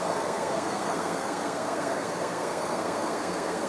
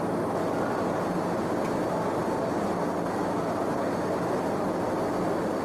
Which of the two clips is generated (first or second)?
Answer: first